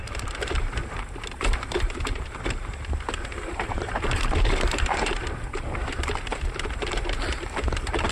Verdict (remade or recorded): remade